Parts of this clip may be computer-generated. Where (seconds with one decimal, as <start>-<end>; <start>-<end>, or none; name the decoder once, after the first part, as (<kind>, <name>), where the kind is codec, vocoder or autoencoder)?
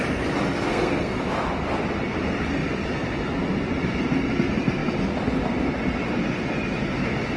0.7-1.2 (codec, SNAC)